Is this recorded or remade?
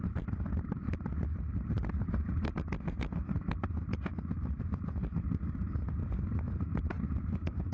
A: remade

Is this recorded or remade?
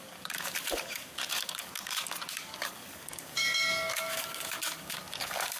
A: remade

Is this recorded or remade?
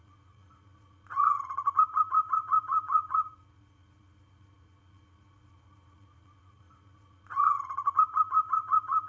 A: remade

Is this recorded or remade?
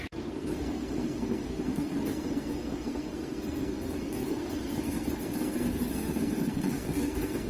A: remade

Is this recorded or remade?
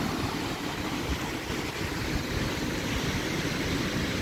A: recorded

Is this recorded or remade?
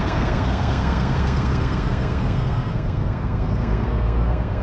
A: remade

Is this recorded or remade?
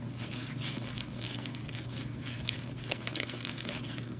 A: remade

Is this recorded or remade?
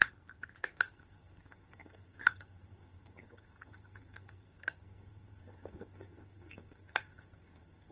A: remade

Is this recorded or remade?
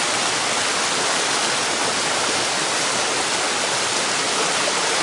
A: recorded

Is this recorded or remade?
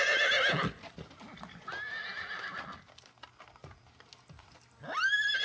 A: recorded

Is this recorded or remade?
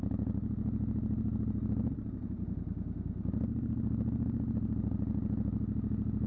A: recorded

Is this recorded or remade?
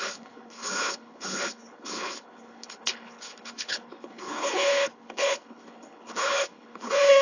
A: remade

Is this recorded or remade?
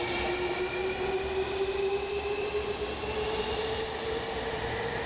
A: recorded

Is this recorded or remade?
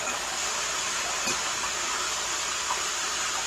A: remade